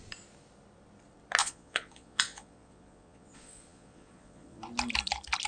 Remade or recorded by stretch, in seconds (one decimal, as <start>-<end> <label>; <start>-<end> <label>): 0.0-1.4 recorded; 1.4-4.6 remade; 4.6-5.5 recorded